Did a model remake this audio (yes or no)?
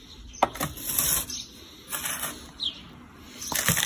no